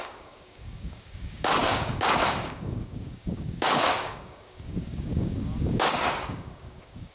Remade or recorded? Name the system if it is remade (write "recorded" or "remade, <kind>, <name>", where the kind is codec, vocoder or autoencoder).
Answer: remade, codec, DAC